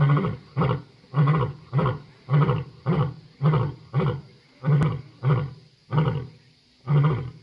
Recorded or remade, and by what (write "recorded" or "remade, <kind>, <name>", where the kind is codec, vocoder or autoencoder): recorded